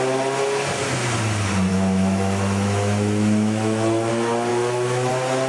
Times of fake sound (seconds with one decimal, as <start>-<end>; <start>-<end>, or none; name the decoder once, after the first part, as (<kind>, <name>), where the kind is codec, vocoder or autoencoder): 1.7-4.1 (autoencoder, DAC-VAE); 4.5-5.1